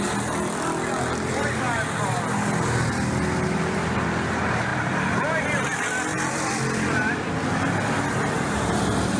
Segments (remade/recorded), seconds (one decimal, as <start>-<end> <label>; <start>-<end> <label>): 0.0-4.7 recorded; 4.7-5.4 remade; 5.4-6.1 recorded; 6.1-7.2 remade; 7.2-9.2 recorded